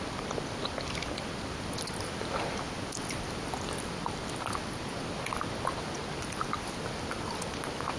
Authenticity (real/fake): real